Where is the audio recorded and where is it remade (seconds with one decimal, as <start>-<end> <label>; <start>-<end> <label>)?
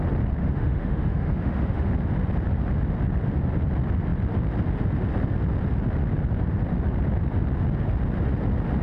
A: 0.0-0.4 recorded; 0.4-1.9 remade; 1.9-8.8 recorded